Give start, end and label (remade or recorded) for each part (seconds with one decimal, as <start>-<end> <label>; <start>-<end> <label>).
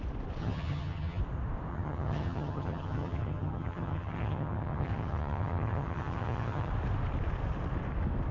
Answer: 0.0-0.4 recorded; 0.4-1.2 remade; 1.2-1.7 recorded; 1.7-6.7 remade; 6.7-8.3 recorded